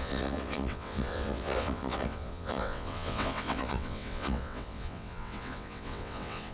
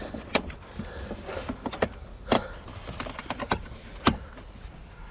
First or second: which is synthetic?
first